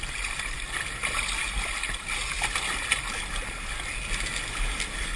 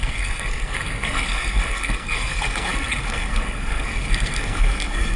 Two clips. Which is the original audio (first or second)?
first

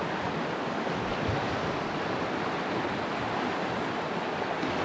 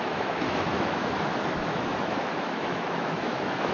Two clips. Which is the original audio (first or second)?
first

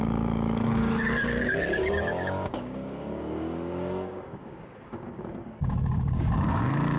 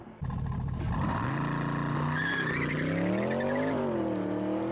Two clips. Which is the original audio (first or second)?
second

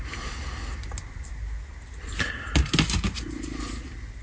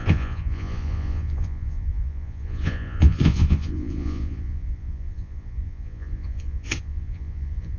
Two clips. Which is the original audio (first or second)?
first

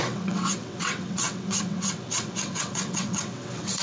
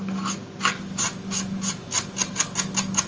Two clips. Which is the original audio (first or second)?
second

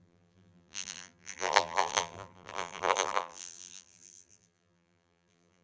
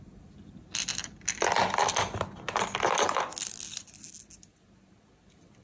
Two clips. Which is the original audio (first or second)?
second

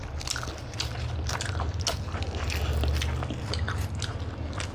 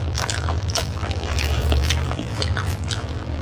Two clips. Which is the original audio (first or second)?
first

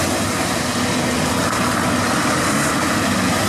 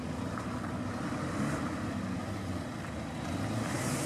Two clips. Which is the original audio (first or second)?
first